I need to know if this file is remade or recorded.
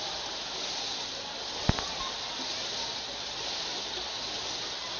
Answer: recorded